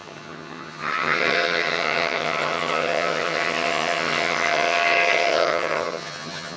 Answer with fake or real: fake